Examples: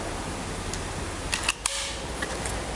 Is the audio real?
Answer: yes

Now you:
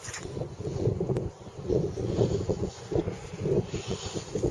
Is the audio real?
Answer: no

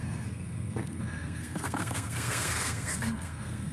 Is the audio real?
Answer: no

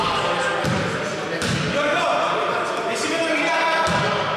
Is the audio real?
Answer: yes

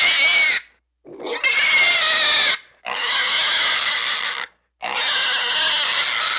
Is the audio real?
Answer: yes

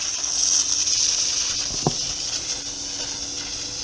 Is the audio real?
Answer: yes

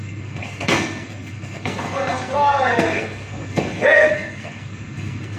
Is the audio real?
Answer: no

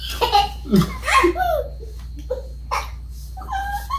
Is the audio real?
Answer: yes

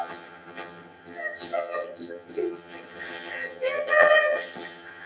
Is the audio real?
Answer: no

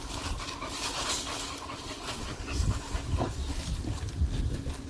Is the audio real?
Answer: yes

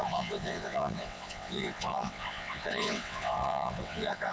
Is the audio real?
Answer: no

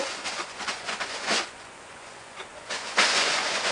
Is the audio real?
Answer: no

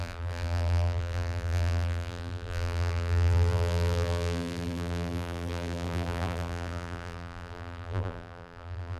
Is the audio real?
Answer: no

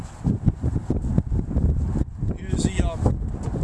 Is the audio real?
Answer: yes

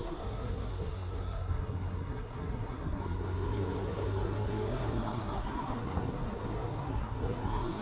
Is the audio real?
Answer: no